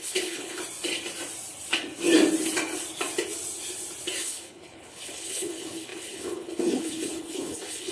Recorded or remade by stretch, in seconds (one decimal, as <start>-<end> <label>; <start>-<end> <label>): 0.0-0.6 remade; 0.6-4.2 recorded; 4.2-7.9 remade

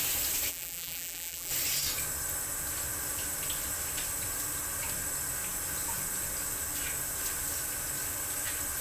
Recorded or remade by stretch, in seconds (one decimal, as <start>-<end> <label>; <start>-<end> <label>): 0.0-0.5 recorded; 0.5-1.5 remade; 1.5-8.8 recorded